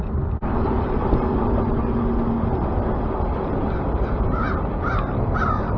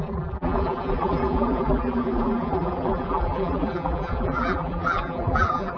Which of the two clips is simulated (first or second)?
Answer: second